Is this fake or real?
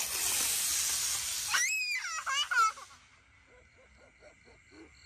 real